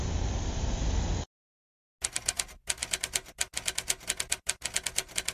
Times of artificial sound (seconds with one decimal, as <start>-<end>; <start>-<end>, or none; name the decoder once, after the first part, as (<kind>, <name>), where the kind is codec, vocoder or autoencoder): none